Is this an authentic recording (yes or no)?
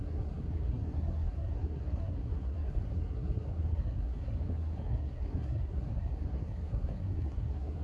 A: no